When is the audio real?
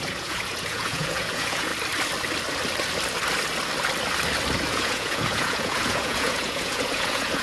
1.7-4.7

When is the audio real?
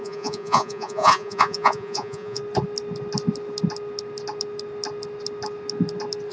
2.4-6.3